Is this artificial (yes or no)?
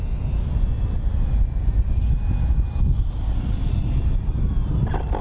no